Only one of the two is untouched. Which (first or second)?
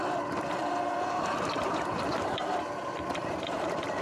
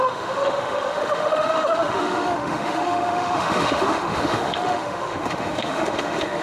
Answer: first